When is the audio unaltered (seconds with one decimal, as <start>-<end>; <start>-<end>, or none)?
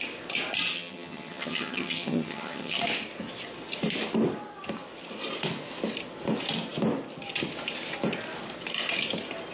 0.0-0.7; 2.8-9.5